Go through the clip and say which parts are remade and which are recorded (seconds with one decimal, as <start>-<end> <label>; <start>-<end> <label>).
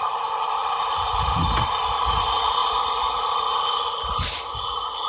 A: 0.0-5.1 recorded